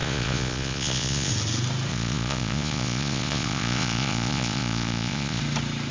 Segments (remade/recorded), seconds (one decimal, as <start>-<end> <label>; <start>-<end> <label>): 0.0-1.3 remade; 1.3-1.9 recorded; 1.9-5.4 remade; 5.4-5.9 recorded